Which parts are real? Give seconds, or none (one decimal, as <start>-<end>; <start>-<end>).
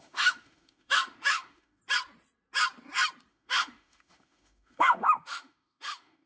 1.8-3.3